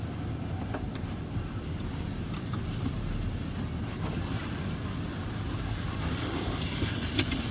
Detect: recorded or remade recorded